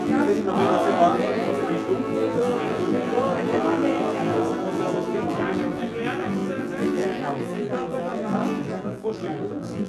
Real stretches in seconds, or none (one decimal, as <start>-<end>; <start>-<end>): none